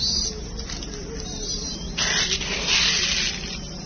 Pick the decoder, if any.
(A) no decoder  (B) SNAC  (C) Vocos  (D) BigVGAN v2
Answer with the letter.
A